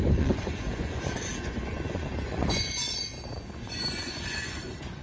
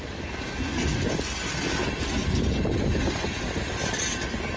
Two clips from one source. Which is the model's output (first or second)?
first